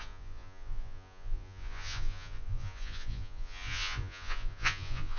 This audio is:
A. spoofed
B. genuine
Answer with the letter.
A